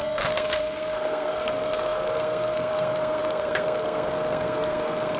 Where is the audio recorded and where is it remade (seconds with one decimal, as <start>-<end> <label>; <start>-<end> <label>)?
0.0-5.2 remade